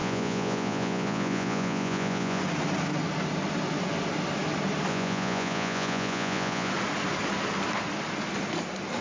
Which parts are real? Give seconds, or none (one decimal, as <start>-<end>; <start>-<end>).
2.4-4.9; 6.7-9.0